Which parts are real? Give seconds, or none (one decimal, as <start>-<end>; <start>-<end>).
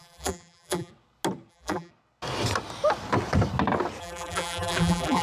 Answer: 0.9-1.5; 1.9-4.0